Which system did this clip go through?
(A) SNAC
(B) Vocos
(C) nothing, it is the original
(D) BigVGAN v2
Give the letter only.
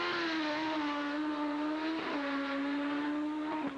C